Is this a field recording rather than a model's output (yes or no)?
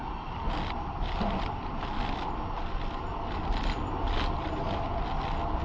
yes